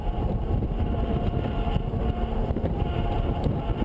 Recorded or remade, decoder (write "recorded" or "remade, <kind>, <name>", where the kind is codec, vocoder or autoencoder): remade, vocoder, BigVGAN v2